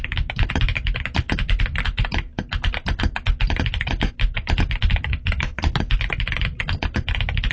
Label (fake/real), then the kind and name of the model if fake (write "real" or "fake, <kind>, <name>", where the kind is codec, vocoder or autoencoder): real